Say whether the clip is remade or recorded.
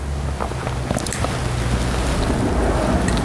recorded